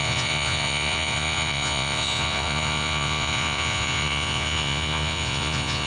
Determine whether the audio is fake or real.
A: fake